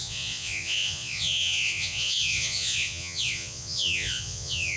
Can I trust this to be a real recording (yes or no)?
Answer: no